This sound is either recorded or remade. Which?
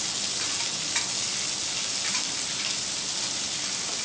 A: recorded